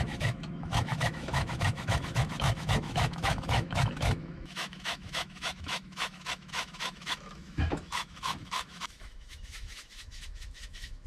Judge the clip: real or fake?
fake